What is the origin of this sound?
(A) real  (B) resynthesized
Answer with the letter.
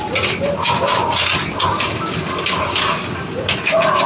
A